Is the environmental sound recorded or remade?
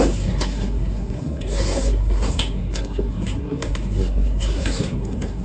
remade